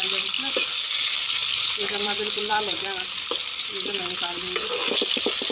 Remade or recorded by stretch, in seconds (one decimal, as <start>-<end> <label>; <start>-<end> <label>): 0.0-1.4 recorded; 1.4-4.7 remade; 4.7-5.5 recorded